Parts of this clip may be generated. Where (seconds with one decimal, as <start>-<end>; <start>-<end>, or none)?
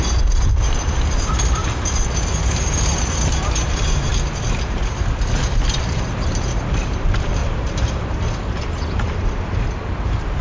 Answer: 0.0-1.6; 2.1-4.1; 5.8-10.4